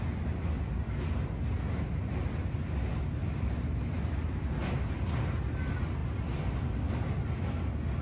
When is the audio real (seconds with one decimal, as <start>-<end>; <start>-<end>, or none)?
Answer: 0.0-3.2; 4.1-8.0